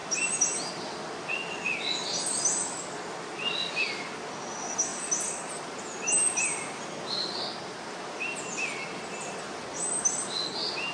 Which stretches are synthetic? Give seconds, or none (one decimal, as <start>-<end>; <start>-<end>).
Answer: none